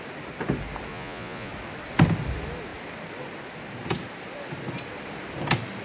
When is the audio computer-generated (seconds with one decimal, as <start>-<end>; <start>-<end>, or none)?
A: 0.9-1.5